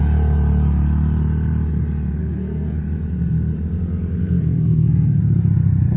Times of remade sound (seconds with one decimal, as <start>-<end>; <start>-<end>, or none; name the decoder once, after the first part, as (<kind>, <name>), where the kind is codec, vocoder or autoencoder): 2.2-2.8 (codec, SNAC); 4.2-5.2